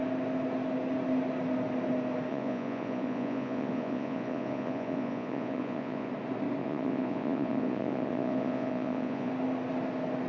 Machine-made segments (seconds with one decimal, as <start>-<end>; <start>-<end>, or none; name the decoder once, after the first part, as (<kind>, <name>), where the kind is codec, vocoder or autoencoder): 2.3-6.1 (vocoder, Vocos); 6.6-9.3